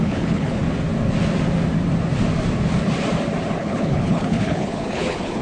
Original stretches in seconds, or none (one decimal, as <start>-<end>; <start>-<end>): 0.6-3.6